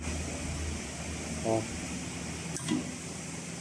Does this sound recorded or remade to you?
recorded